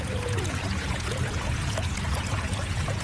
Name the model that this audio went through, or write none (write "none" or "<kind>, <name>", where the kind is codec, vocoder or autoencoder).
vocoder, Vocos